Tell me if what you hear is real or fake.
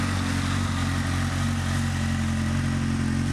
real